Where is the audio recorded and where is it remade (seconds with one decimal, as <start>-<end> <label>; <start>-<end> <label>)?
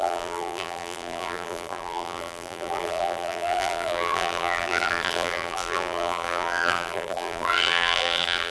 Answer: 0.0-8.5 remade